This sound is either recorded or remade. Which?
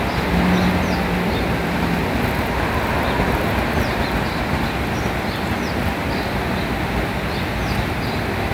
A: recorded